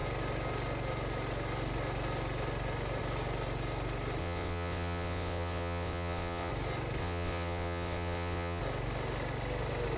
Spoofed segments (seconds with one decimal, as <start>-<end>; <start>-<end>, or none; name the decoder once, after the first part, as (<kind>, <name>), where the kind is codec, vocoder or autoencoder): 4.2-6.5 (vocoder, WaveNeXt); 7.0-8.6